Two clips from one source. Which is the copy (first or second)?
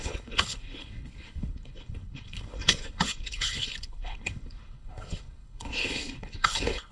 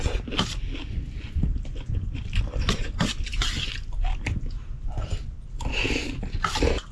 first